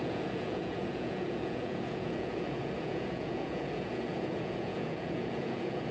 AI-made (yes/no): yes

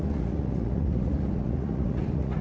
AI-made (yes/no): yes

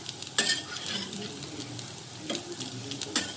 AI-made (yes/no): no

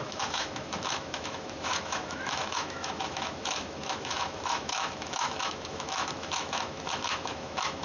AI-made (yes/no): yes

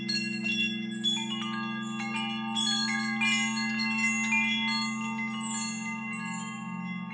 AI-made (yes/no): no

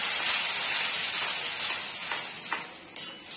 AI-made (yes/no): no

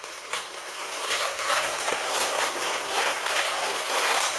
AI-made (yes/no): yes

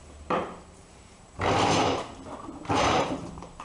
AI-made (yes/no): yes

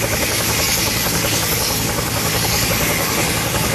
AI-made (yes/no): yes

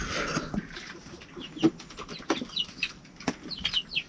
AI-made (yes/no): no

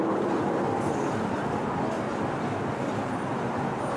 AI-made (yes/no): no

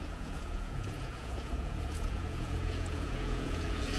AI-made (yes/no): yes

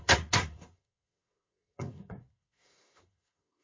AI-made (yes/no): yes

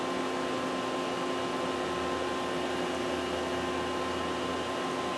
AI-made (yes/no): no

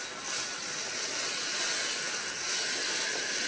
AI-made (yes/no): no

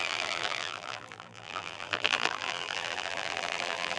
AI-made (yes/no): yes